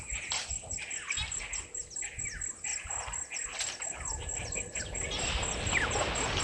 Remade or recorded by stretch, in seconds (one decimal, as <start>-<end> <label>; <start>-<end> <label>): 0.0-6.4 recorded